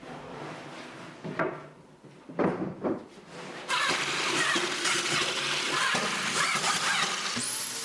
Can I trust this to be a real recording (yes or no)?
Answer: no